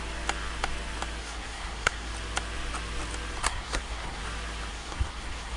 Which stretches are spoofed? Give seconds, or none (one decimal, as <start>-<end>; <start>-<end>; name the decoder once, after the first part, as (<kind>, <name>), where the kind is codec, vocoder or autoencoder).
1.2-2.1 (codec, SNAC); 3.4-4.2; 4.7-5.6